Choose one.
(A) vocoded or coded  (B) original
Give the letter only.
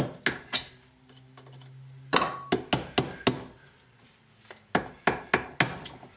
B